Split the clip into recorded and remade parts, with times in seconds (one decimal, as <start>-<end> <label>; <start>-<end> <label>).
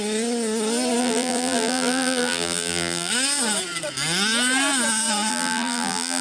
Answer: 0.0-1.0 recorded; 1.0-3.1 remade; 3.1-5.3 recorded; 5.3-6.2 remade